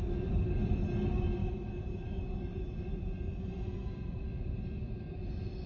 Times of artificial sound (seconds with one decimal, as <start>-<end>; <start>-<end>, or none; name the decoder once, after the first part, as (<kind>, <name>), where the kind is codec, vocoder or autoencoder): 1.4-2.9 (autoencoder, DAC-VAE)